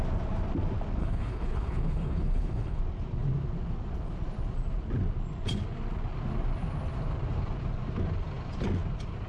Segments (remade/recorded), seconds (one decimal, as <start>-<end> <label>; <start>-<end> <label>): 0.0-1.0 recorded; 1.0-2.8 remade; 2.8-9.3 recorded